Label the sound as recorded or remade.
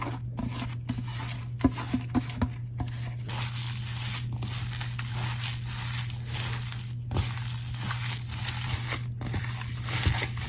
recorded